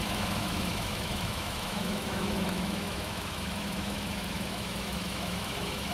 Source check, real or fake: fake